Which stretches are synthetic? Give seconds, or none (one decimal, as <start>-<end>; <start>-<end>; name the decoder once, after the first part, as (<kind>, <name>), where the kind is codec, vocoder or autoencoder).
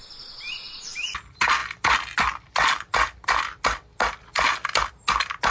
1.6-4.9 (vocoder, BigVGAN v2)